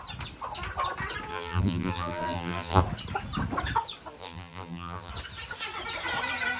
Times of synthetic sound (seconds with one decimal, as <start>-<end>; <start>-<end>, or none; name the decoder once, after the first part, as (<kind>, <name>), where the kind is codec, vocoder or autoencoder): 1.3-2.8 (vocoder, BigVGAN v2); 4.2-5.1